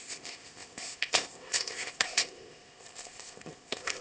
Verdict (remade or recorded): remade